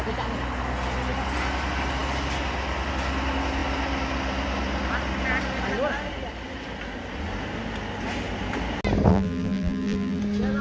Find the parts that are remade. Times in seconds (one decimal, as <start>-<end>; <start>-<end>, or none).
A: 9.1-10.2